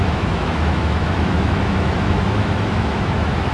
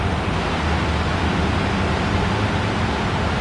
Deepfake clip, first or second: first